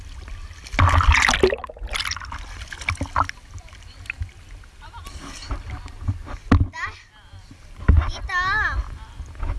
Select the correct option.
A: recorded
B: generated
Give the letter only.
A